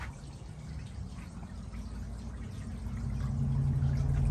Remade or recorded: recorded